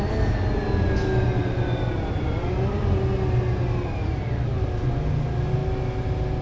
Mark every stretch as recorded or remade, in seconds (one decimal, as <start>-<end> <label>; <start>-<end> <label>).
0.0-6.4 recorded